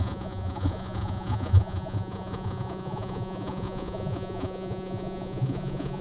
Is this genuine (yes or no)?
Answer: no